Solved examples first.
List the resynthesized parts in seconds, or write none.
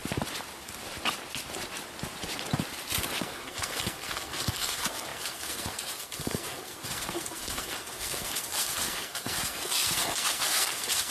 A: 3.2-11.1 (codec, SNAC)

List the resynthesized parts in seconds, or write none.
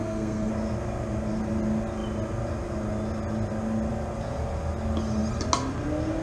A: 0.0-0.5 (codec, SNAC)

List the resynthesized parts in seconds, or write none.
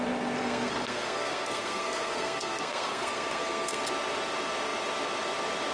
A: 0.4-3.8 (codec, SNAC)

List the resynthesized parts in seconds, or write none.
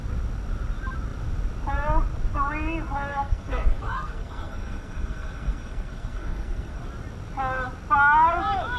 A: 3.1-6.8 (codec, SNAC)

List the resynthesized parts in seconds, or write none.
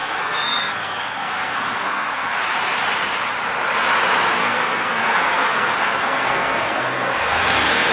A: 0.0-2.3 (codec, SNAC); 4.4-7.9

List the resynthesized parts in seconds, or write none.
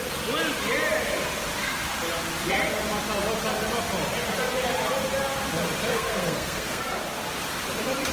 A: 5.9-6.8 (codec, SNAC)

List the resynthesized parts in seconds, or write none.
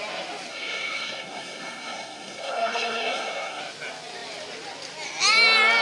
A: 0.5-3.6 (codec, SNAC)